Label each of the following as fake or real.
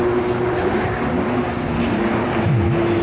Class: real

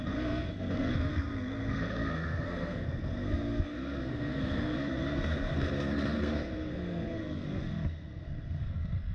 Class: fake